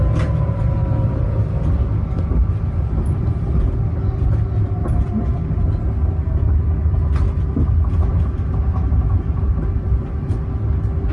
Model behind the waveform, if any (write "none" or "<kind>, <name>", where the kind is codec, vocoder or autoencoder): none